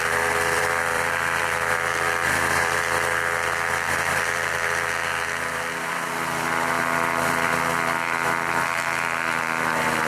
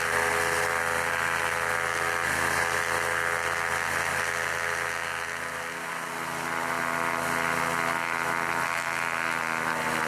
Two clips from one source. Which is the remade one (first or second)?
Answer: first